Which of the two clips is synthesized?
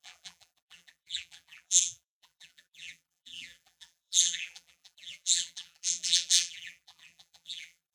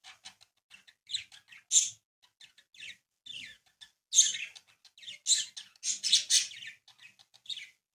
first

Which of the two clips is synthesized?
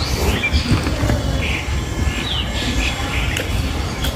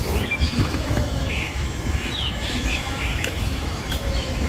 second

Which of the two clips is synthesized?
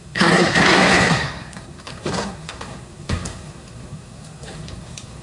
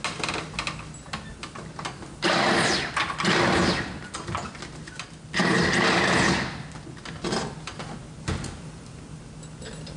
first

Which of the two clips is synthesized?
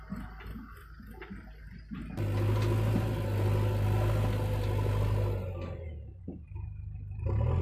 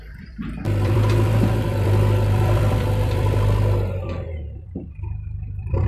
second